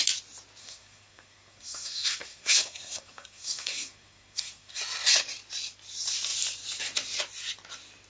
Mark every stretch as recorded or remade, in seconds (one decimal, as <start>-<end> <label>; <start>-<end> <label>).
0.0-0.6 recorded; 0.6-4.8 remade; 4.8-8.1 recorded